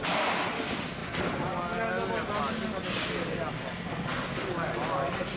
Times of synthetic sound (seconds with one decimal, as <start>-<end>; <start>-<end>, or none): none